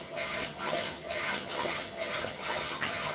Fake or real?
fake